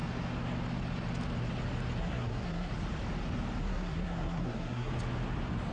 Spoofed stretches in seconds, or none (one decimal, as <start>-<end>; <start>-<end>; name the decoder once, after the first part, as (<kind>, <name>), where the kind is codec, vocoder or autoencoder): 2.0-2.7 (codec, SNAC); 3.6-4.9